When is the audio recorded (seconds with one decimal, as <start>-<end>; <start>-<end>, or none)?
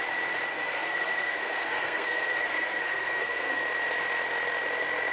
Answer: 0.0-0.5; 3.6-5.1